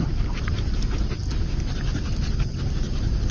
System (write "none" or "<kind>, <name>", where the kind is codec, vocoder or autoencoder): none